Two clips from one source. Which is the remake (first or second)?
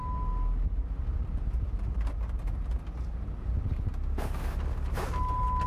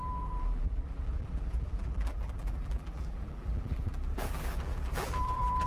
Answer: second